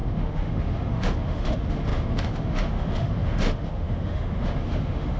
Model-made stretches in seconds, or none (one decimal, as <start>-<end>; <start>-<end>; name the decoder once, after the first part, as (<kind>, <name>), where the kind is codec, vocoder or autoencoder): 0.0-5.2 (autoencoder, DAC-VAE)